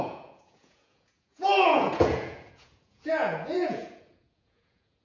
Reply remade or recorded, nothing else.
remade